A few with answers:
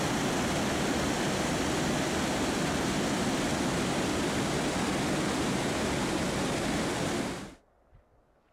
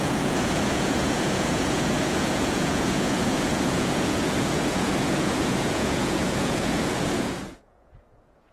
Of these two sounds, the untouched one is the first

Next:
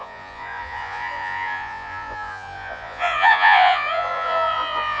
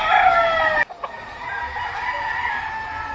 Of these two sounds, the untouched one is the second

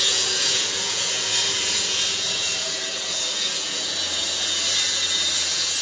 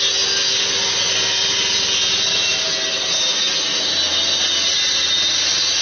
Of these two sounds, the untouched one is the second